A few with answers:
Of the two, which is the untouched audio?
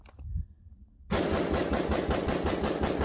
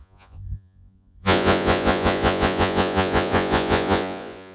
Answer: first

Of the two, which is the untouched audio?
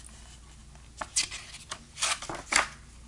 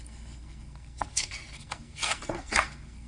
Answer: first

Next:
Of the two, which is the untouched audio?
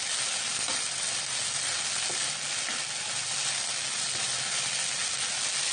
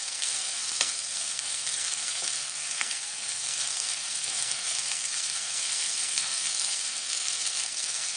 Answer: first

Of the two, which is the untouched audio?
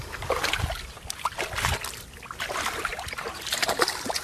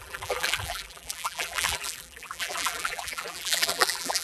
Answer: first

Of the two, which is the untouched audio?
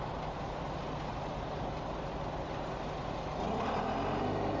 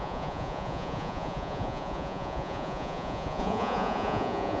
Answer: first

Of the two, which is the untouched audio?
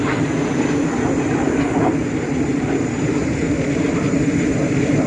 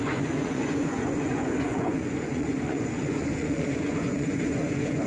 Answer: first